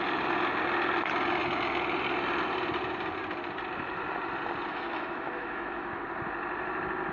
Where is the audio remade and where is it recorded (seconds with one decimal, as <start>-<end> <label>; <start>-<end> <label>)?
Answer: 0.0-4.7 recorded; 4.7-6.0 remade; 6.0-7.1 recorded